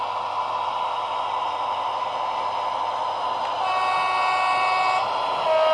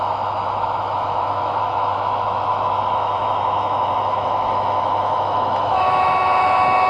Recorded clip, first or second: first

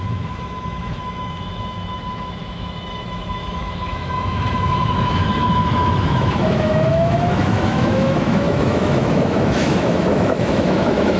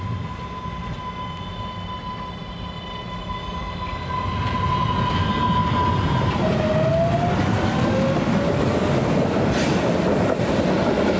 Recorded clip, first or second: second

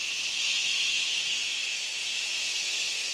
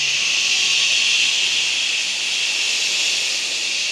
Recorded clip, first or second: second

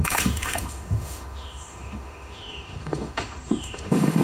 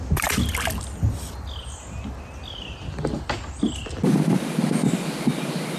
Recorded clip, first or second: second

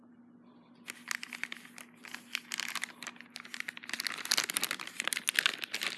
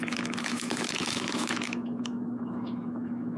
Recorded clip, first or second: first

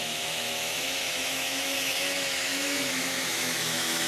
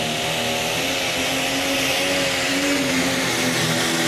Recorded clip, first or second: second